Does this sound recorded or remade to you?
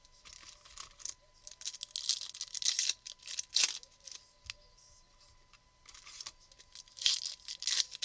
recorded